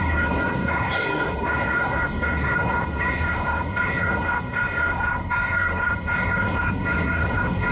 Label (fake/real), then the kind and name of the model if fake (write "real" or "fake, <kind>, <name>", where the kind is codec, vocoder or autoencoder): fake, codec, SNAC